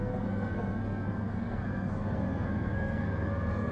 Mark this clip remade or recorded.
remade